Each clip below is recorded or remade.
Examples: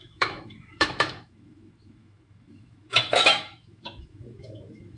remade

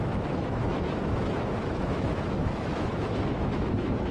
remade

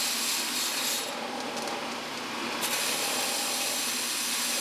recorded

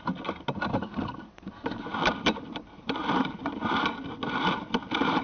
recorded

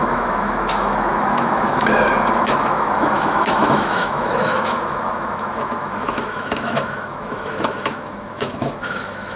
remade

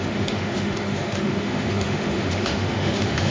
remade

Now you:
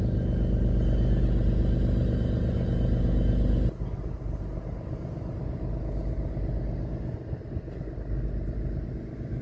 recorded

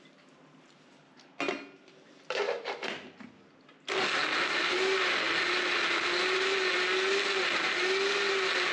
recorded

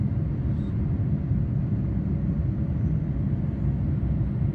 recorded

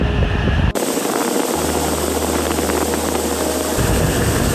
recorded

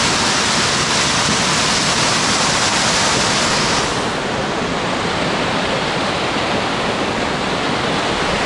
recorded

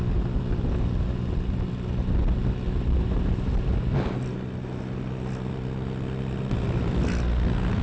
recorded